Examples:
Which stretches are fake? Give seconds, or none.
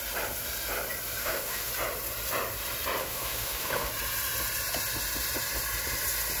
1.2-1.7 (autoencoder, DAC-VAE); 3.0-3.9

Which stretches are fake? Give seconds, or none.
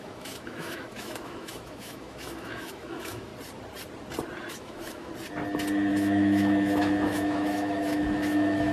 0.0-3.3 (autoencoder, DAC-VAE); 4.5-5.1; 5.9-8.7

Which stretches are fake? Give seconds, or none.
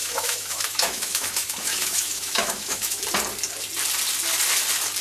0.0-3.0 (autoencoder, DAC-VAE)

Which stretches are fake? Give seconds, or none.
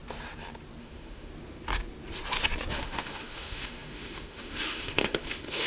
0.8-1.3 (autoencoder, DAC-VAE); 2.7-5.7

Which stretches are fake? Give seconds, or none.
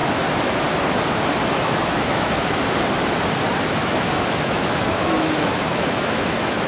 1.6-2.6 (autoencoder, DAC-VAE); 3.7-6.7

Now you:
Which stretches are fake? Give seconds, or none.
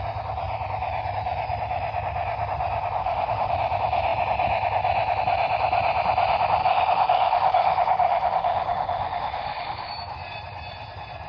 3.0-3.5 (autoencoder, DAC-VAE); 6.6-9.9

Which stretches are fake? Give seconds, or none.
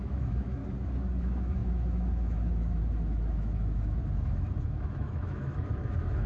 0.0-0.6 (autoencoder, DAC-VAE); 1.2-6.3